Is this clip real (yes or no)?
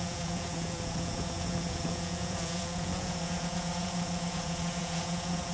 no